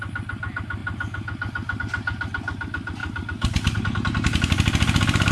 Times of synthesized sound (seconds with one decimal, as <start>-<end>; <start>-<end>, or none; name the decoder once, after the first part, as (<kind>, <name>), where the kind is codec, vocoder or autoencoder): 3.0-5.3 (vocoder, BigVGAN v2)